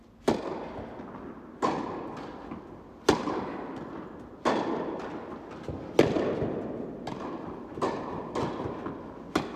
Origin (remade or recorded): recorded